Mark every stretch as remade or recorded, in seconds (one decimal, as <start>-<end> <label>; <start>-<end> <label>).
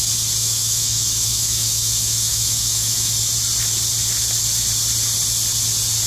0.0-0.4 recorded; 0.4-3.1 remade; 3.1-6.1 recorded